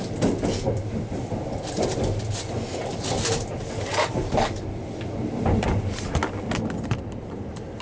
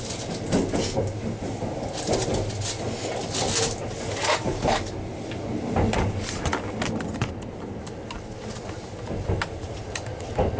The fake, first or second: first